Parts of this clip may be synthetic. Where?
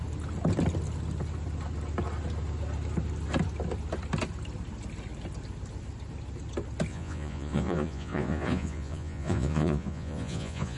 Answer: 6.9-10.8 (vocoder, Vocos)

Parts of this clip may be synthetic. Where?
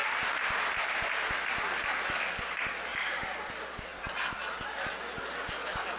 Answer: 0.0-0.9 (vocoder, BigVGAN v2); 2.9-3.5; 3.9-4.8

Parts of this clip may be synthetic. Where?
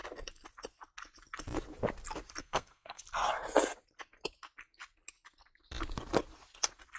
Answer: 2.4-3.0 (codec, SNAC)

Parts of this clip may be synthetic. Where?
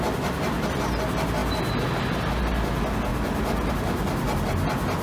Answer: none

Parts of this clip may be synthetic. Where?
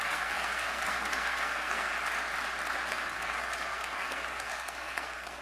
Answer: 0.0-1.9 (codec, SNAC); 2.9-5.4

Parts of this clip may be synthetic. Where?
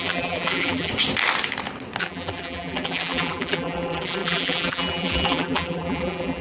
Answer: 0.0-0.9 (vocoder, BigVGAN v2); 2.0-6.4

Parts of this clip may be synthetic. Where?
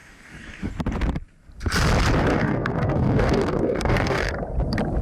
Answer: 0.0-0.7 (codec, DAC); 2.3-4.3